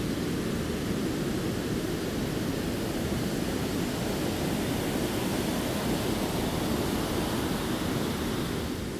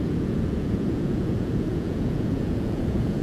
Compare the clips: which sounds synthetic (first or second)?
second